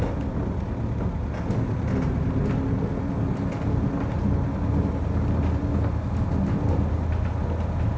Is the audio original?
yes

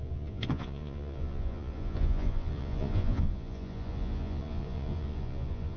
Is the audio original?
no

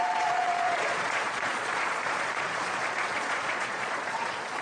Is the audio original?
no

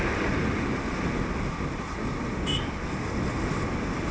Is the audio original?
yes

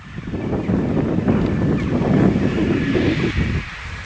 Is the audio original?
yes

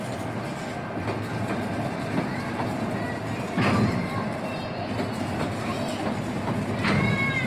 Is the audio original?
yes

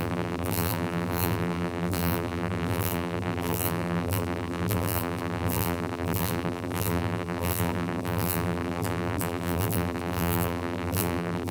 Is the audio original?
no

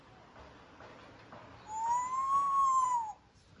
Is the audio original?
yes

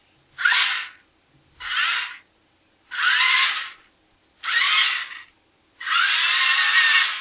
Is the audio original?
yes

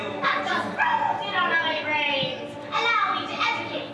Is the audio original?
yes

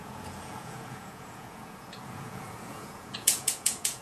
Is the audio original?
no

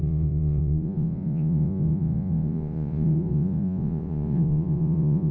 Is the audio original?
no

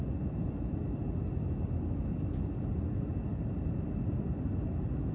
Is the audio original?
yes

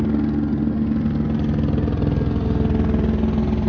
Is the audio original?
yes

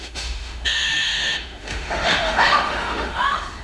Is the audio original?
no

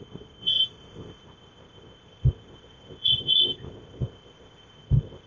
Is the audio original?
no